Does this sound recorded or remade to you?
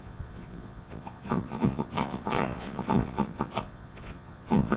remade